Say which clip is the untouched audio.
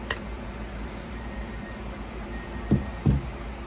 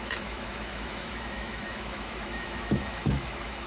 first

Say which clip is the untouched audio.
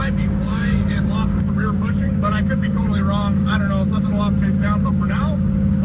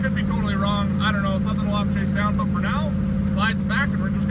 second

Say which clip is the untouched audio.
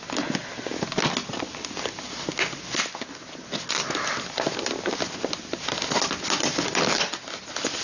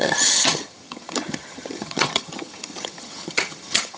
first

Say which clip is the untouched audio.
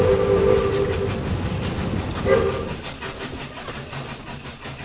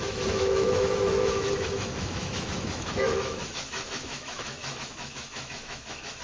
first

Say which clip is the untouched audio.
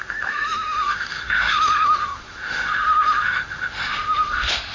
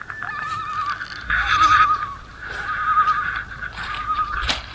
second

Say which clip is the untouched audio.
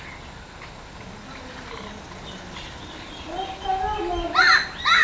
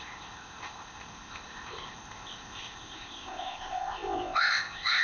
first